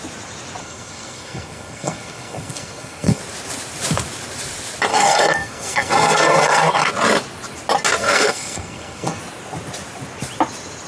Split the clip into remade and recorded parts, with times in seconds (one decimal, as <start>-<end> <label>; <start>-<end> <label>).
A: 0.0-0.6 recorded; 0.6-3.2 remade; 3.2-4.9 recorded; 4.9-6.9 remade; 6.9-8.0 recorded; 8.0-9.2 remade; 9.2-10.9 recorded